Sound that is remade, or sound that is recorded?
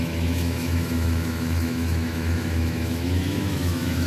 remade